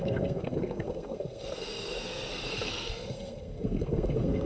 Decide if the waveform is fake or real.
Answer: fake